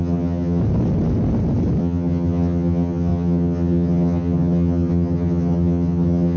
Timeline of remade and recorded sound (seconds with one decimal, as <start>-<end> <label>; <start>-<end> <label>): 0.0-0.6 remade; 0.6-1.8 recorded; 1.8-6.4 remade